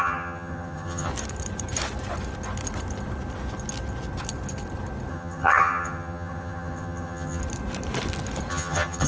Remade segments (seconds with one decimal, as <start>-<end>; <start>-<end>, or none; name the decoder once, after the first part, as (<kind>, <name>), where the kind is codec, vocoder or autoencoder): 0.0-1.1 (vocoder, HiFi-GAN); 5.1-7.4; 8.5-9.1